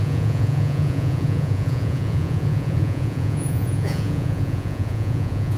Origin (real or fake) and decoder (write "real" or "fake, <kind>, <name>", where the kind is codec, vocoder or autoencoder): fake, vocoder, Vocos